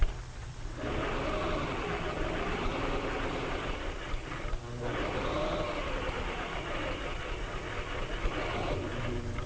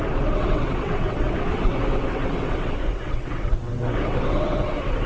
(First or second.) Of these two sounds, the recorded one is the first